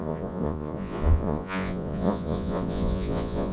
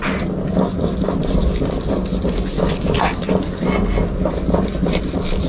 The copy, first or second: first